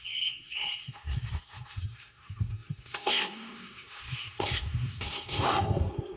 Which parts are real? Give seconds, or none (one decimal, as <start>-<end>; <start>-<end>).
none